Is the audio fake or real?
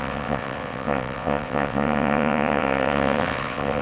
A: fake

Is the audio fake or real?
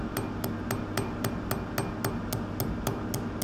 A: real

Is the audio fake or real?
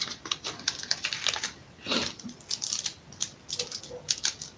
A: real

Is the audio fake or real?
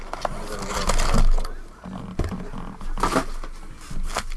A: real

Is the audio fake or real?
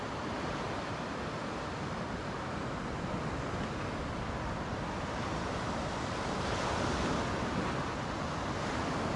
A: real